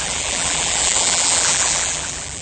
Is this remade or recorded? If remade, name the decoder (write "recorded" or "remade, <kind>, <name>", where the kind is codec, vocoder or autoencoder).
remade, vocoder, BigVGAN v2